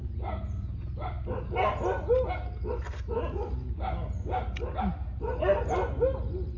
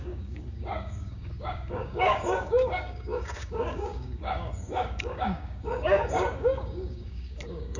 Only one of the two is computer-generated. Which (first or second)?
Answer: second